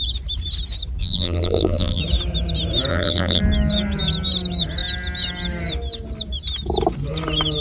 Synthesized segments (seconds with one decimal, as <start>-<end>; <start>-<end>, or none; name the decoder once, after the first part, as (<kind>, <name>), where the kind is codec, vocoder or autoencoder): 1.0-2.0 (vocoder, BigVGAN v2); 2.9-3.4